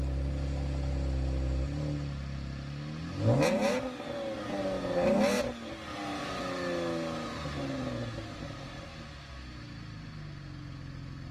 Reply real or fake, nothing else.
real